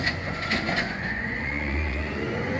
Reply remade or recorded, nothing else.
remade